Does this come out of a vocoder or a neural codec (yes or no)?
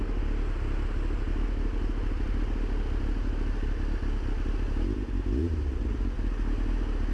no